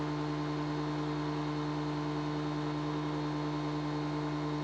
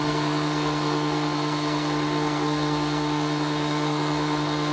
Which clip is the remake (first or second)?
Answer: second